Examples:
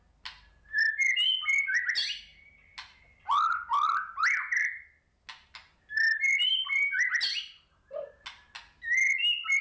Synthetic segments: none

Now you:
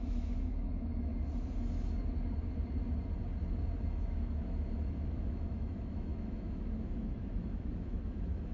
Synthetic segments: 0.0-1.1 (autoencoder, DAC-VAE); 3.8-8.5

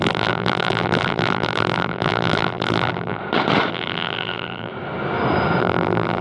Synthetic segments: 0.0-3.2 (vocoder, BigVGAN v2); 3.7-4.7; 5.6-6.2

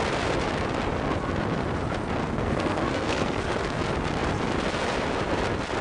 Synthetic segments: 2.2-3.8 (codec, SNAC)

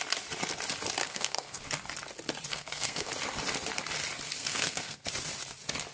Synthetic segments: 1.0-1.6 (codec, SNAC); 2.5-3.1; 4.4-5.0